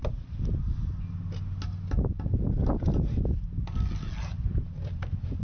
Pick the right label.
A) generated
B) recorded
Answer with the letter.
B